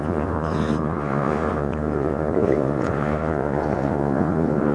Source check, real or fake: fake